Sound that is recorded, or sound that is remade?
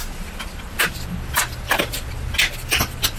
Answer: recorded